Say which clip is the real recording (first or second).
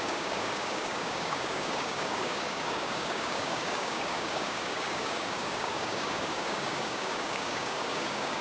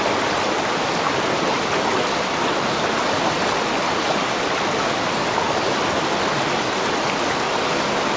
second